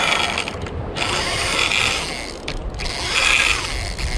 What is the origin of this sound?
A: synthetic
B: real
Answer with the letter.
B